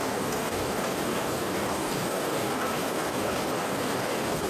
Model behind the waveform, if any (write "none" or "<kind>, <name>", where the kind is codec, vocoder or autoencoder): codec, DAC